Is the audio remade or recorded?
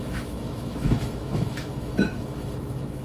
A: remade